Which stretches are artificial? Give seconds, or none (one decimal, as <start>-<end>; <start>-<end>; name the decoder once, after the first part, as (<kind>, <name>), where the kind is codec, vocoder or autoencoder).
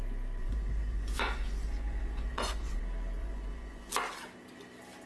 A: 0.4-2.8 (vocoder, Vocos); 3.2-3.9